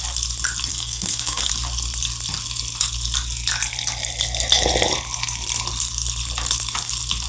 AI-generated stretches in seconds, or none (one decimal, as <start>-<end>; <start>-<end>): 0.7-1.5